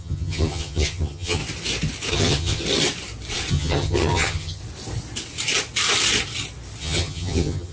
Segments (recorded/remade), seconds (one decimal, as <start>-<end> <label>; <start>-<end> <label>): 0.0-1.4 remade; 1.4-2.1 recorded; 2.1-2.6 remade; 2.6-3.5 recorded; 3.5-4.6 remade; 4.6-6.8 recorded; 6.8-7.7 remade